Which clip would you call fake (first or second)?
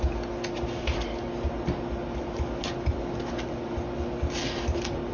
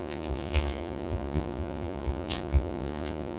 second